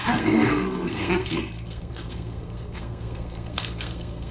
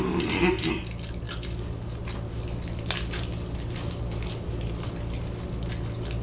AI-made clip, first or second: first